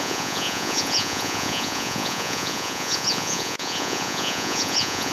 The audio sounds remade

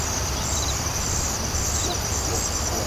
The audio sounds remade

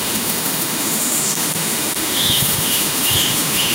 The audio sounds remade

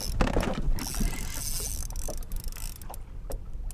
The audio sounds recorded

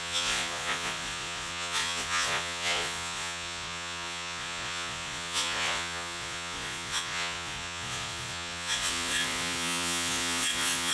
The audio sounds remade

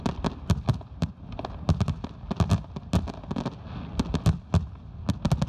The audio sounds recorded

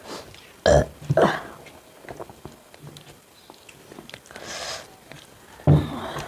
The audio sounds recorded